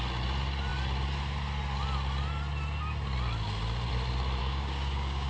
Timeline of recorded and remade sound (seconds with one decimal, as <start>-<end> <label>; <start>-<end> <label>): 0.0-4.4 recorded; 4.4-5.3 remade